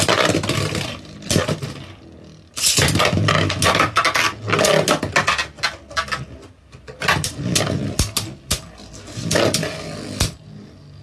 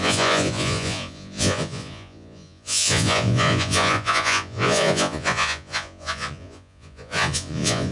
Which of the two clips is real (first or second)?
first